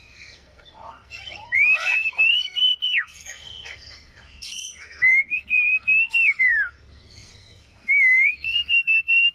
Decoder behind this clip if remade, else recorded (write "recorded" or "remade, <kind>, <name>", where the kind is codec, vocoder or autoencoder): remade, codec, SNAC